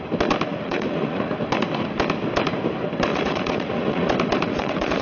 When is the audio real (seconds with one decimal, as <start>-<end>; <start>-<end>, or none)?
0.0-0.5; 1.3-3.1; 4.1-4.5